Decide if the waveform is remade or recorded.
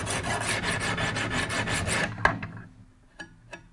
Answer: recorded